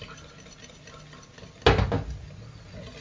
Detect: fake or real real